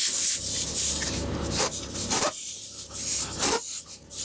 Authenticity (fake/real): fake